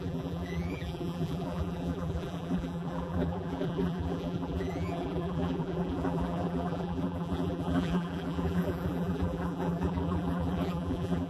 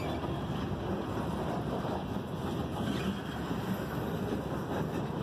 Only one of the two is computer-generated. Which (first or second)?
first